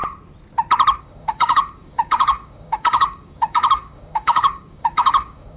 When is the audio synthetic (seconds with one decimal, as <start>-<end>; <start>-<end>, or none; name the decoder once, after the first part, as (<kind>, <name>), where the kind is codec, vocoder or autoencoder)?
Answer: 1.0-5.6 (codec, DAC)